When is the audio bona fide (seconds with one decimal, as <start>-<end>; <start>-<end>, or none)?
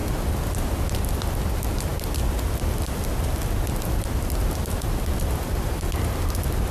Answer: 0.0-1.9; 5.9-6.7